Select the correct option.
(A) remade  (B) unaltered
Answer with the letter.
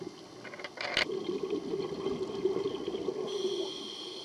B